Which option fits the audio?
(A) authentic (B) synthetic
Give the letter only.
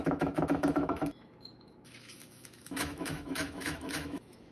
B